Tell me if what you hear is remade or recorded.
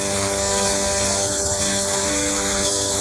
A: remade